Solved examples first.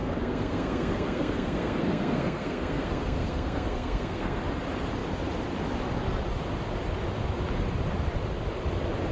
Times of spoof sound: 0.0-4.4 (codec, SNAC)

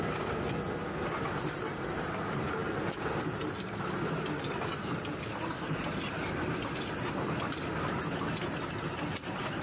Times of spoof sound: none

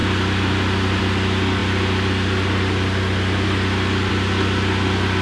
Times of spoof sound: none

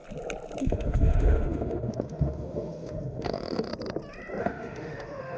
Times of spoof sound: 0.6-3.7 (autoencoder, DAC-VAE); 4.4-5.4

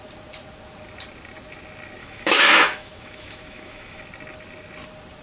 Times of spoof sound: 2.0-4.0 (autoencoder, DAC-VAE)